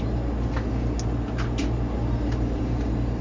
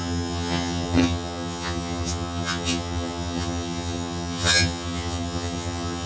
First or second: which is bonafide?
first